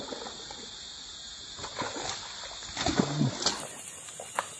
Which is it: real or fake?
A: real